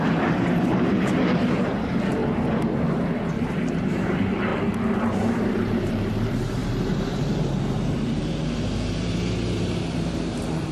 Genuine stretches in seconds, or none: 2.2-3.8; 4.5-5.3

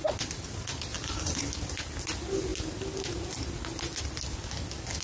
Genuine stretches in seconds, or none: 0.0-0.9; 1.4-5.0

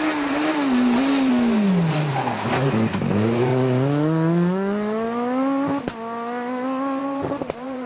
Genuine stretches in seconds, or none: 1.3-1.9; 3.5-7.0

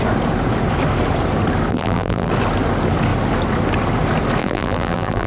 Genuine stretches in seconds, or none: 0.0-1.7; 2.3-4.4

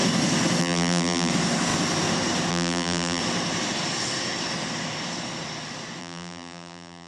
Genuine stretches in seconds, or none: 0.0-0.6; 1.3-2.5; 3.2-6.0

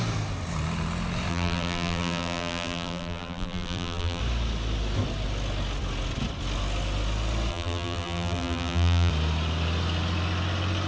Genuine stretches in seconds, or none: 0.0-1.3; 4.2-7.5; 9.1-10.9

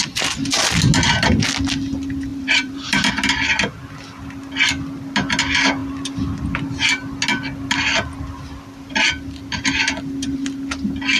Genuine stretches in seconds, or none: 0.0-2.3; 3.1-11.2

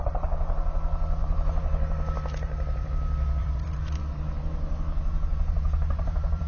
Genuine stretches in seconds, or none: 0.0-1.2; 2.9-3.4